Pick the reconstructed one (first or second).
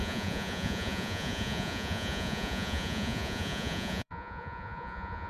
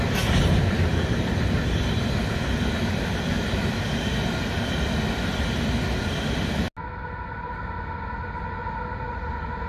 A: first